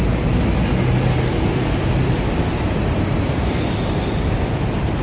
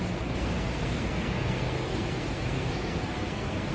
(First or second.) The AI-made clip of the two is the second